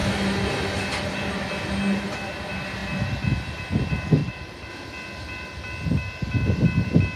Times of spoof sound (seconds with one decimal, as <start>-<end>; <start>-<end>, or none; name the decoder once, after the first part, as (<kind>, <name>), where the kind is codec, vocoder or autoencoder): 4.2-4.7 (vocoder, BigVGAN v2)

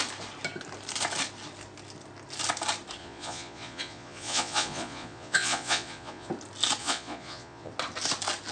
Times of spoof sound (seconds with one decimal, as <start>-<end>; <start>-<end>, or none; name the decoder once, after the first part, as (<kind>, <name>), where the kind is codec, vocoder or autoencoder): 3.0-6.3 (vocoder, Vocos); 6.8-7.7

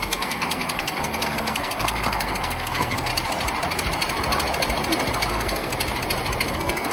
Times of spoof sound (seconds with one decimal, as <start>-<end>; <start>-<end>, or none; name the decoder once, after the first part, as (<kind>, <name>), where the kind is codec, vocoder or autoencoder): 0.0-3.1 (codec, SNAC); 5.3-5.7; 6.5-6.9